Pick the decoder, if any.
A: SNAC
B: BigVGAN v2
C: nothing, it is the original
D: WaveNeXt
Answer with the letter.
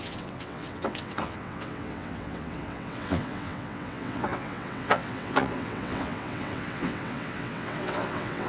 D